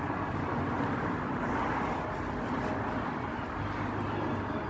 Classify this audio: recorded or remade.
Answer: recorded